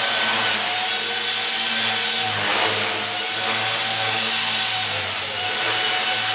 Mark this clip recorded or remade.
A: recorded